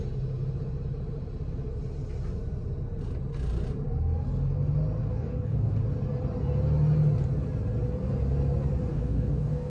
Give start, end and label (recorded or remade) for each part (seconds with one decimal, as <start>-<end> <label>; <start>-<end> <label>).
0.0-5.0 recorded; 5.0-5.7 remade; 5.7-8.9 recorded; 8.9-9.7 remade